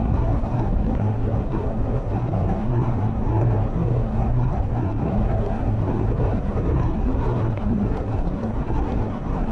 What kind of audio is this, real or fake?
fake